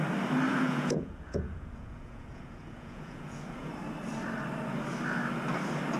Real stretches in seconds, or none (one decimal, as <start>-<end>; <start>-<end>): 0.0-0.5; 3.7-6.0